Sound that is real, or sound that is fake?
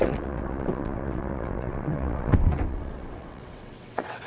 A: fake